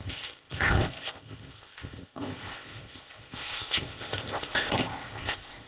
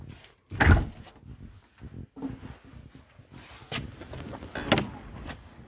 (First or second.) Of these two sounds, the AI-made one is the first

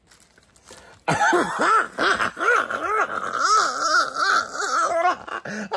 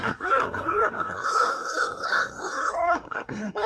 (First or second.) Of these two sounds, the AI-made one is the second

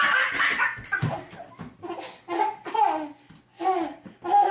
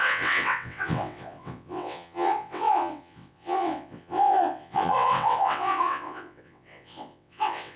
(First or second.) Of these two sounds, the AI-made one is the second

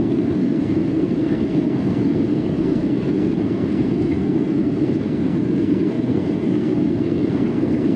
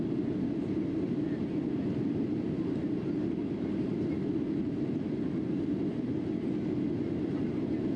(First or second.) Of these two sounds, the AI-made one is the first